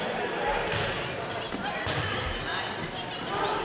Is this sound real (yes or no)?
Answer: yes